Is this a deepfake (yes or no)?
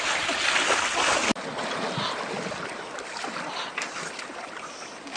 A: no